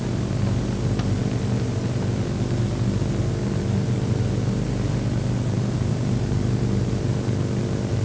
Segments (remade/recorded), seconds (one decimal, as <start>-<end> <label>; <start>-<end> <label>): 0.0-8.0 recorded